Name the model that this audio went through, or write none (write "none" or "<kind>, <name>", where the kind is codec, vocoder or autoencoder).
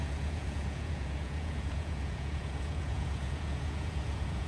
vocoder, Vocos